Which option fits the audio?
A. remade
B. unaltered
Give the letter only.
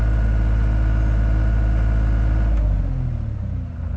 B